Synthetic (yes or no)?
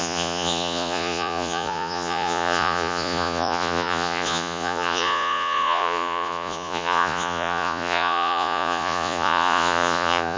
yes